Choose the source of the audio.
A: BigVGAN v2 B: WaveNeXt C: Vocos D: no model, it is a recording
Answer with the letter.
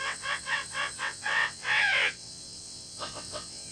B